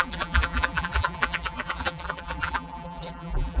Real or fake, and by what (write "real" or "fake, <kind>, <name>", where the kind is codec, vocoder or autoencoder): fake, vocoder, BigVGAN v2